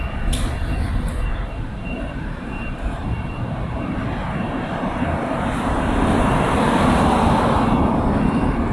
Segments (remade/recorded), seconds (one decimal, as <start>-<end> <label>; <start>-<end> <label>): 0.0-1.3 recorded; 1.3-5.4 remade; 5.4-8.7 recorded